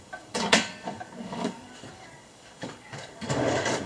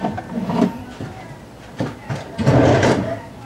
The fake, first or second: first